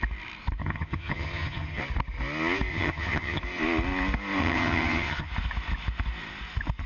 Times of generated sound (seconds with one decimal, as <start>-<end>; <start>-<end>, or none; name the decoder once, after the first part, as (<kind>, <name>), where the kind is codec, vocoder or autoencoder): 0.6-1.8 (vocoder, HiFi-GAN); 2.7-3.4; 4.4-5.3